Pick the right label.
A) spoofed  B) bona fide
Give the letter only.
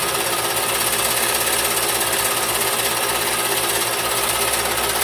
B